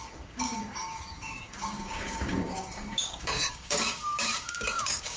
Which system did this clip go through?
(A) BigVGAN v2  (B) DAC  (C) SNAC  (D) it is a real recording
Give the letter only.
B